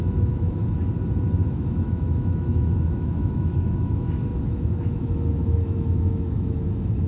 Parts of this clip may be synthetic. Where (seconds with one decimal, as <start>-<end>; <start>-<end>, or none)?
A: 0.0-0.6; 1.4-7.1